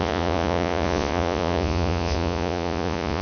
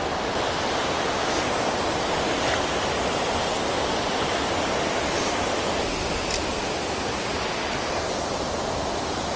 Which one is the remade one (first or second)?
first